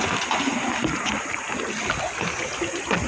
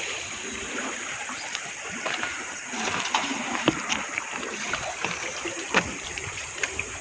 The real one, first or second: first